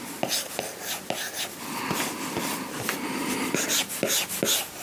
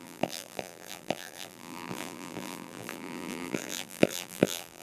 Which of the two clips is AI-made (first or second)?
second